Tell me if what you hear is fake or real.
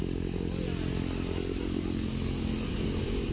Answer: real